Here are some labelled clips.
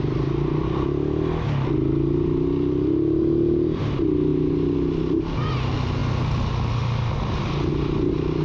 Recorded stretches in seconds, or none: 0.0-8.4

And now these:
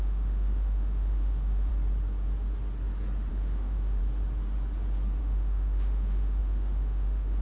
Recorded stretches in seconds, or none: 1.7-3.3; 4.0-5.2

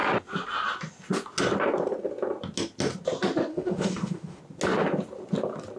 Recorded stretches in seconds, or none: 0.0-3.5; 4.4-5.8